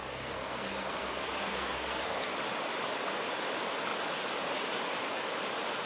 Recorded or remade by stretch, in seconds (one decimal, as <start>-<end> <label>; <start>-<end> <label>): 0.0-2.3 remade; 2.3-5.9 recorded